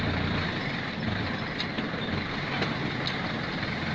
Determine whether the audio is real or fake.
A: real